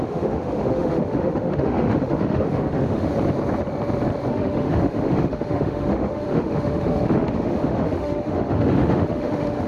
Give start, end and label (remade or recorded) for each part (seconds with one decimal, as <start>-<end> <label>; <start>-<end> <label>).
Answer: 0.0-3.1 remade; 3.1-4.3 recorded; 4.3-9.7 remade